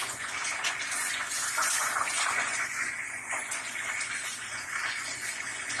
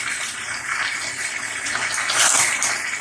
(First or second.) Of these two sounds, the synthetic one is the first